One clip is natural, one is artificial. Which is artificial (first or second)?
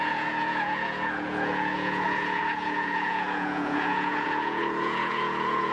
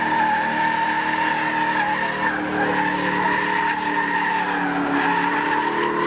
first